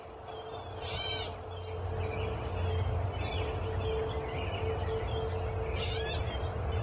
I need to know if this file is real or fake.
real